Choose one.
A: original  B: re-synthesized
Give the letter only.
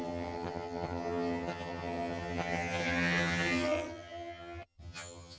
B